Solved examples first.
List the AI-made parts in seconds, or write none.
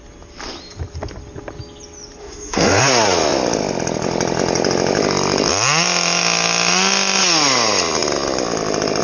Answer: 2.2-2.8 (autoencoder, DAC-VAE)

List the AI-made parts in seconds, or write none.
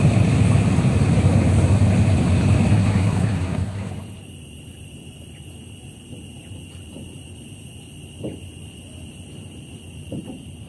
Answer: 2.7-3.9 (codec, SNAC)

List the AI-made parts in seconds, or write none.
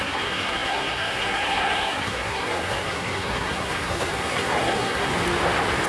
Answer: 0.0-5.1 (codec, SNAC)